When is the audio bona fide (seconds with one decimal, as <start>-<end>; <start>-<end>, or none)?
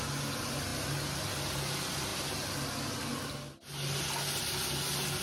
0.0-5.2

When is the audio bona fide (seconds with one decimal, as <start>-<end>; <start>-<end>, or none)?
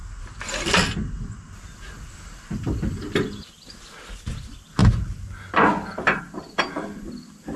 0.0-7.6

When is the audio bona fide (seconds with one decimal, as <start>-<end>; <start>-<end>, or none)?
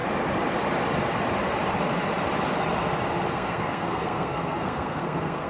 0.0-3.3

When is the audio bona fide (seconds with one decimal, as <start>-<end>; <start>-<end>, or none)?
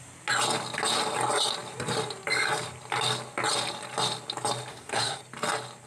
0.0-4.7; 5.2-5.9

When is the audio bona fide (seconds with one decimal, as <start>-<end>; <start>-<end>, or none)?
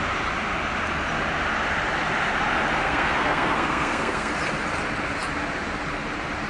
0.0-2.8; 4.3-6.5